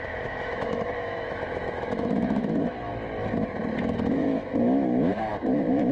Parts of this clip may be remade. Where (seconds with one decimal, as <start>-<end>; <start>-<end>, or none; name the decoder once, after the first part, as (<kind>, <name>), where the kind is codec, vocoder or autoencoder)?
0.0-2.9 (autoencoder, DAC-VAE); 3.8-5.9